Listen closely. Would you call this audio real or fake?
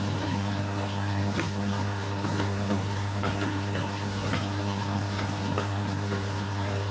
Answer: fake